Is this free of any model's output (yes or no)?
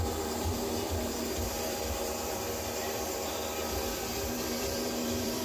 no